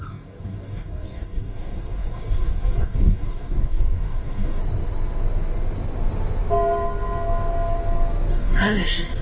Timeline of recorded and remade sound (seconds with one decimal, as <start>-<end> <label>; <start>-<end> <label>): 0.0-4.6 remade; 4.6-8.3 recorded; 8.3-9.2 remade